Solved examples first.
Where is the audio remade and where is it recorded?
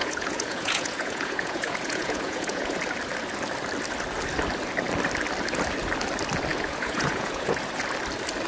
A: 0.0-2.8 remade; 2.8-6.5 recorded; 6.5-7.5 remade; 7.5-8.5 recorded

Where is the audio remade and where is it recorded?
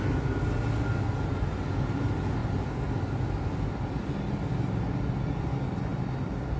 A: 0.0-6.6 recorded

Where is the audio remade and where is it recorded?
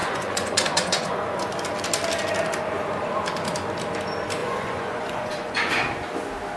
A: 0.0-1.5 remade; 1.5-4.4 recorded; 4.4-5.7 remade; 5.7-6.6 recorded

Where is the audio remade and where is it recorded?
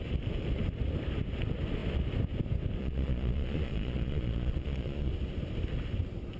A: 0.0-2.8 recorded; 2.8-5.1 remade; 5.1-6.4 recorded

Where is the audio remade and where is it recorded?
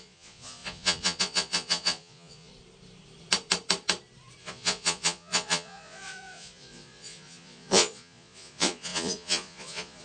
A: 0.0-2.5 remade; 2.5-4.4 recorded; 4.4-10.0 remade